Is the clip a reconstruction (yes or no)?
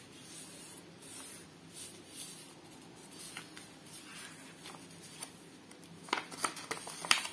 no